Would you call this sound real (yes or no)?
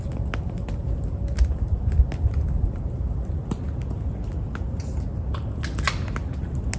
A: yes